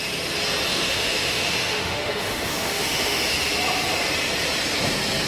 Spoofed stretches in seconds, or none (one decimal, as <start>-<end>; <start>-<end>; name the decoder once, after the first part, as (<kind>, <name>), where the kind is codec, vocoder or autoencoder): 0.7-3.2 (autoencoder, DAC-VAE)